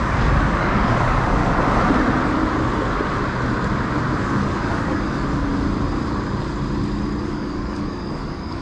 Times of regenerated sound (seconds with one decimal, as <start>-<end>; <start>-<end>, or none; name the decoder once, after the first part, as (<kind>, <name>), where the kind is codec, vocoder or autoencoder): 0.0-1.4 (codec, DAC); 4.2-5.5; 7.2-8.6